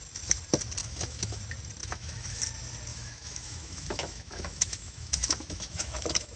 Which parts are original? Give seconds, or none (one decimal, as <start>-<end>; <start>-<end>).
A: 0.0-0.8; 1.4-1.8; 2.4-2.9